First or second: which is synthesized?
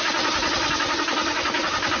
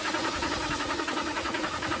second